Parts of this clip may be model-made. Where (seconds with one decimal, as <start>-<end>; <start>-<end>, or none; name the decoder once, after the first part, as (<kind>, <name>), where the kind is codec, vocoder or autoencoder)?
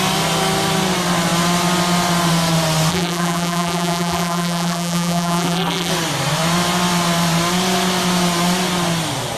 2.9-5.9 (vocoder, BigVGAN v2)